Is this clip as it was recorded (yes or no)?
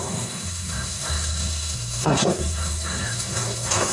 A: no